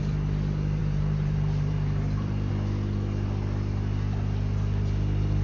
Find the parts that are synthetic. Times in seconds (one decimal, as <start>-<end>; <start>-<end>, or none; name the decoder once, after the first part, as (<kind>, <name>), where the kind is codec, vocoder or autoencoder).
0.8-2.5 (vocoder, BigVGAN v2)